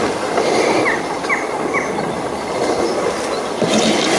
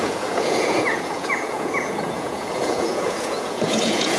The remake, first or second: second